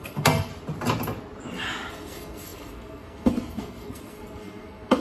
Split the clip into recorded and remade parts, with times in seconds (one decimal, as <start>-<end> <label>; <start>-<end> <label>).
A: 0.0-0.5 remade; 0.5-1.9 recorded; 1.9-5.0 remade